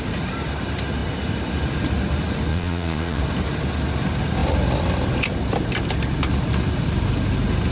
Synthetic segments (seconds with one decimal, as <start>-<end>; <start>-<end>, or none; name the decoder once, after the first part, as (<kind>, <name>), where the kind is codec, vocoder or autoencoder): 2.5-3.2 (vocoder, Vocos)